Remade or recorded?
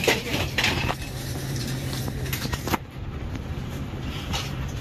remade